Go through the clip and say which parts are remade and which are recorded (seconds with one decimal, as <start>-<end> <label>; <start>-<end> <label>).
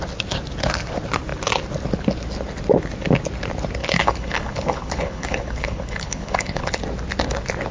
0.0-3.8 recorded; 3.8-6.8 remade; 6.8-7.7 recorded